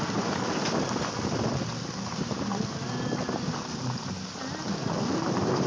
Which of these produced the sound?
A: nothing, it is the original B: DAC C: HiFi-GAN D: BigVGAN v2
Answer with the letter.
A